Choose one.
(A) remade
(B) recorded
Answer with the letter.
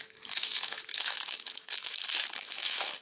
A